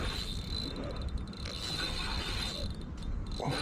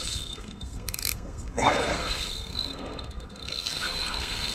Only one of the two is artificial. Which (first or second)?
second